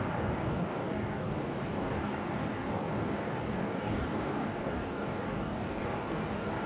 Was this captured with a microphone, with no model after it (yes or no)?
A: no